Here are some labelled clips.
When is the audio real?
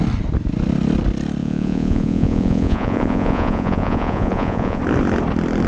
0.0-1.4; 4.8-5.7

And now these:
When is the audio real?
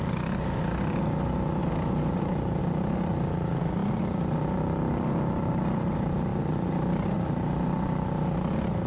0.0-8.9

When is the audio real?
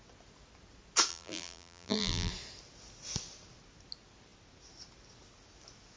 0.0-1.1; 2.3-6.0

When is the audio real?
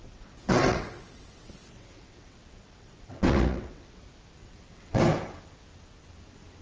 4.0-4.4; 5.0-6.6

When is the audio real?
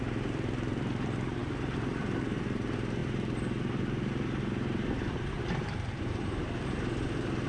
none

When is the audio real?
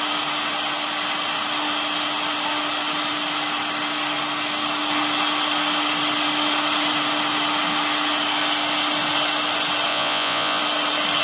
0.0-9.9; 10.6-11.2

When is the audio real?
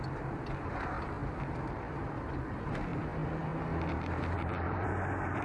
3.1-3.9